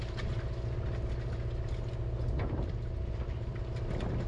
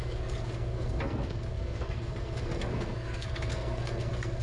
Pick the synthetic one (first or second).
second